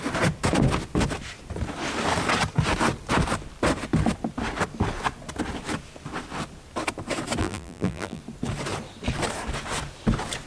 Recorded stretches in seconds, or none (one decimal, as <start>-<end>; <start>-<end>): 0.0-7.4; 8.2-10.5